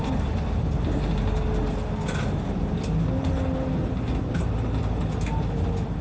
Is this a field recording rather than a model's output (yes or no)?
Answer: yes